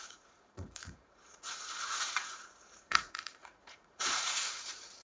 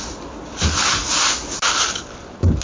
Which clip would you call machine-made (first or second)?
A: first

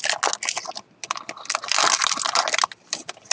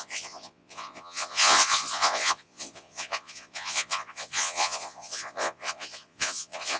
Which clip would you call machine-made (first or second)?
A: second